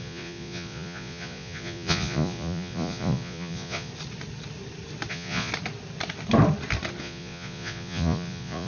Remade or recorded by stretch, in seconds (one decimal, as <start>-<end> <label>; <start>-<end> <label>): 0.0-3.9 remade; 3.9-5.1 recorded; 5.1-5.5 remade; 5.5-7.0 recorded; 7.0-8.7 remade